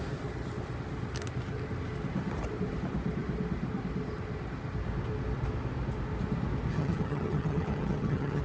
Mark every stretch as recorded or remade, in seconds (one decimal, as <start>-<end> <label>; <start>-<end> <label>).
0.0-6.7 recorded; 6.7-8.4 remade